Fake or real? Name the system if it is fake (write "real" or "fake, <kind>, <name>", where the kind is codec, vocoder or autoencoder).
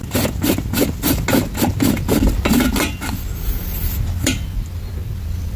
real